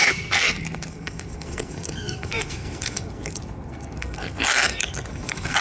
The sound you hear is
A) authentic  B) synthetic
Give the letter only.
B